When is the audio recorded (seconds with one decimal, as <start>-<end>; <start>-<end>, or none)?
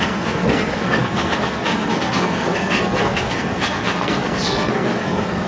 none